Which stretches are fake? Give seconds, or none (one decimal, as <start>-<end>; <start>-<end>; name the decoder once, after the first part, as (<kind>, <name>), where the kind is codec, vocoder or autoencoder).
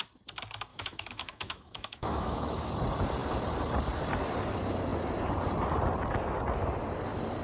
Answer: 0.7-2.7 (autoencoder, DAC-VAE)